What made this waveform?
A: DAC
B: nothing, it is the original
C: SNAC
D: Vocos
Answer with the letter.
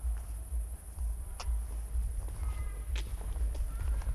B